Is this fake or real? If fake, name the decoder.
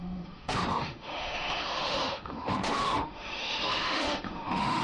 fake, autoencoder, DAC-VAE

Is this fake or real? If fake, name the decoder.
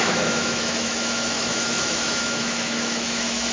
fake, autoencoder, DAC-VAE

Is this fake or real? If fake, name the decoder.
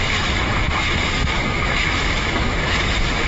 fake, autoencoder, DAC-VAE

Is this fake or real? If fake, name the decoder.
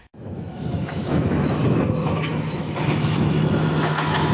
fake, autoencoder, DAC-VAE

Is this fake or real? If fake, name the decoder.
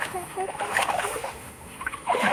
fake, autoencoder, DAC-VAE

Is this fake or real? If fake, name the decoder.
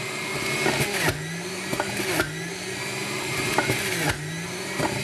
real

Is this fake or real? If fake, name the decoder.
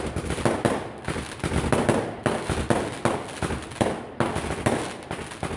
real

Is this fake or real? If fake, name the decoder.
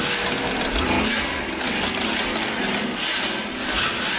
real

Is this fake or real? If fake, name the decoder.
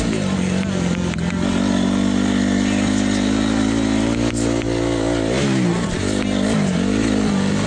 real